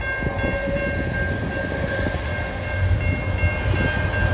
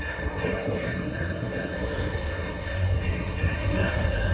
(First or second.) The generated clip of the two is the second